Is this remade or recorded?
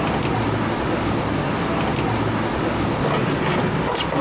recorded